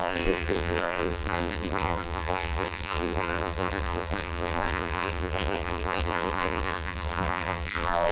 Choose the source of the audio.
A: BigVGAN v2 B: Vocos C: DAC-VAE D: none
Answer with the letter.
A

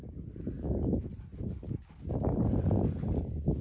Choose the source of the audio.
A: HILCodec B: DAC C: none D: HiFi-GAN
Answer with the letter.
C